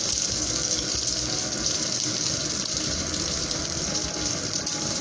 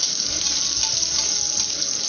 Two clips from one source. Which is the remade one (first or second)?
first